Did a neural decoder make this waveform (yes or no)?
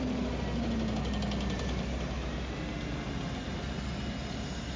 no